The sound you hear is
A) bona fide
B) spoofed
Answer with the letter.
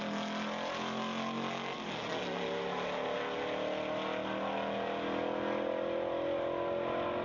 A